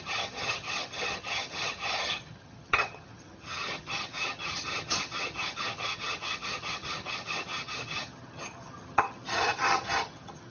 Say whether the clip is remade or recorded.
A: remade